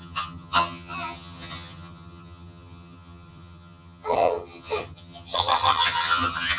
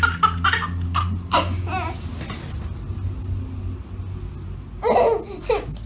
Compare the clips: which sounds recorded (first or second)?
second